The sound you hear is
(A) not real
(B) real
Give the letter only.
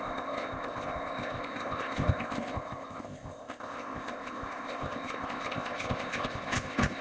A